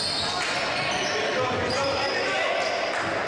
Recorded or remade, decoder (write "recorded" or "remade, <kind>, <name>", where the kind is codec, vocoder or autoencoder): recorded